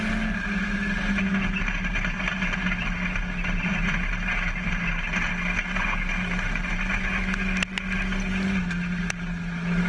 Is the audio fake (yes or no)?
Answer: no